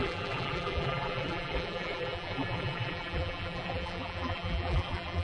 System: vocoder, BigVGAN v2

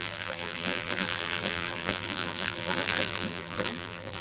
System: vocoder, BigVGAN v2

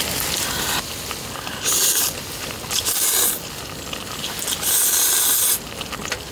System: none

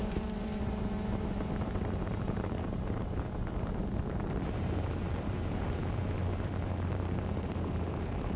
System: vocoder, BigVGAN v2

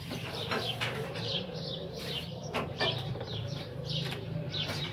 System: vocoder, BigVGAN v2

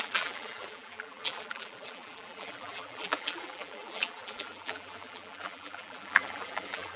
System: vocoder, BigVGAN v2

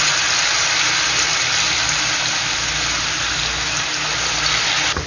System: none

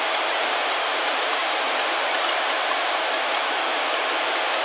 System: none